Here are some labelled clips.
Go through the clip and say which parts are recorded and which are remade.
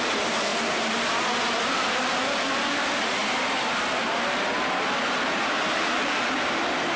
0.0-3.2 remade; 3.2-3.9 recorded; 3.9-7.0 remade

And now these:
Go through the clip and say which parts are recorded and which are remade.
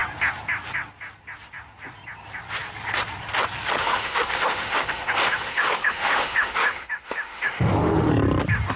0.0-3.8 recorded; 3.8-8.1 remade; 8.1-8.8 recorded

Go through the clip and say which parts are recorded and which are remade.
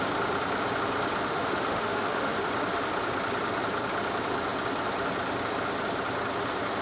0.0-1.2 recorded; 1.2-2.5 remade; 2.5-6.8 recorded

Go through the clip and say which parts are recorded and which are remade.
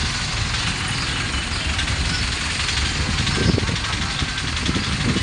0.0-5.2 recorded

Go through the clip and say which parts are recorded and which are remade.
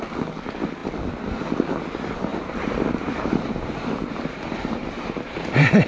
0.0-2.3 recorded; 2.3-5.9 remade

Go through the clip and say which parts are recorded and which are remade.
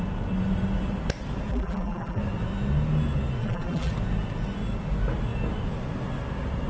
0.0-1.5 recorded; 1.5-2.2 remade; 2.2-3.4 recorded; 3.4-3.9 remade; 3.9-6.7 recorded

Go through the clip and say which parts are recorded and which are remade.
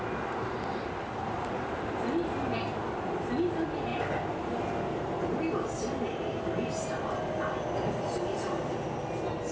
0.0-0.4 recorded; 0.4-2.5 remade; 2.5-9.5 recorded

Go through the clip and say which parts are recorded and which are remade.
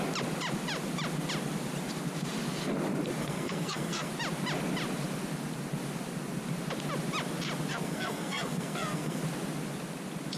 0.0-3.2 recorded; 3.2-4.1 remade; 4.1-7.7 recorded; 7.7-9.2 remade; 9.2-10.4 recorded